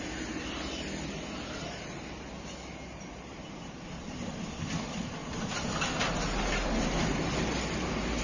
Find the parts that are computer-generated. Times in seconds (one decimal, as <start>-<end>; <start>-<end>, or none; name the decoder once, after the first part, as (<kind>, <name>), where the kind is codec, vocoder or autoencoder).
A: none